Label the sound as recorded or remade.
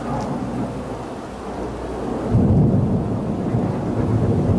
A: recorded